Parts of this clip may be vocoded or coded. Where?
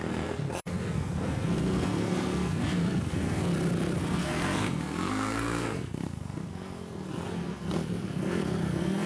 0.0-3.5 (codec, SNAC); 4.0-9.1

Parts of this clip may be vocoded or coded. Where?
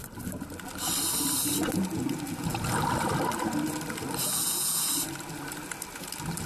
4.2-4.9 (vocoder, Vocos)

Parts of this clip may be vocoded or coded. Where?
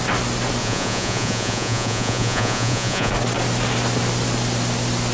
0.6-3.1 (vocoder, Vocos)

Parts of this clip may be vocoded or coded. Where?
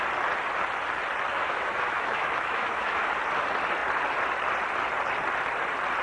1.3-3.1 (autoencoder, DAC-VAE)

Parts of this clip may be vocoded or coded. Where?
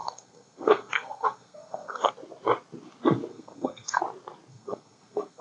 0.0-2.1 (codec, SNAC); 3.3-4.0; 4.5-5.4